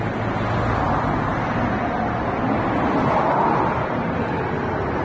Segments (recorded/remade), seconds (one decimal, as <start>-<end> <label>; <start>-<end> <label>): 0.0-5.0 recorded

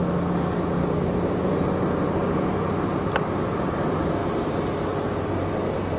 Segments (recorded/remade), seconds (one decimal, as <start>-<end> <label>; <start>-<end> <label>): 0.0-0.8 recorded; 0.8-1.5 remade; 1.5-6.0 recorded

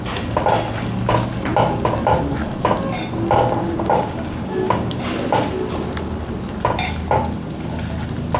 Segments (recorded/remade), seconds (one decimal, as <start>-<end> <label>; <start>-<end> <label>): 0.0-3.6 recorded; 3.6-5.0 remade; 5.0-8.4 recorded

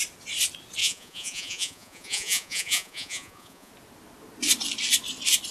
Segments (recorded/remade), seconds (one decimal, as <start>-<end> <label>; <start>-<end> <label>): 0.0-0.8 recorded; 0.8-3.7 remade; 3.7-5.5 recorded